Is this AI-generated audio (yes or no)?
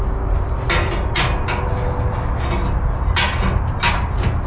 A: no